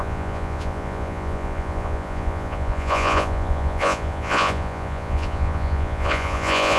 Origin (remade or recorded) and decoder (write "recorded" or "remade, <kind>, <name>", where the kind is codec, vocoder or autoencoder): remade, vocoder, Vocos